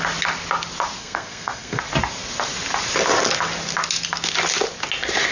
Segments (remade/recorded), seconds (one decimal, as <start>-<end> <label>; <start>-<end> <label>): 0.0-1.0 recorded; 1.0-1.8 remade; 1.8-5.3 recorded